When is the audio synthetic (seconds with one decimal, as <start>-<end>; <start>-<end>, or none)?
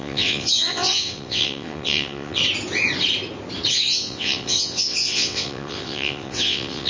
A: 0.0-2.4; 3.7-6.9